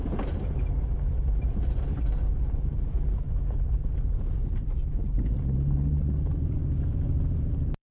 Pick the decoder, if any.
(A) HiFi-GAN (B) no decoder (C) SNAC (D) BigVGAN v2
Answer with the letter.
D